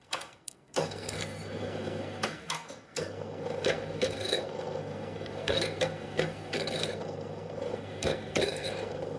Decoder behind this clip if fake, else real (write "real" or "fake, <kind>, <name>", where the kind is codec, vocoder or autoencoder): fake, codec, SNAC